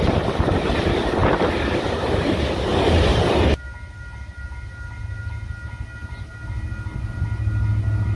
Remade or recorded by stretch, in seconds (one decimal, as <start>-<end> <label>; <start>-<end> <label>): 0.0-8.2 recorded